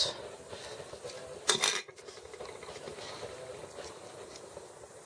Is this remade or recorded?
recorded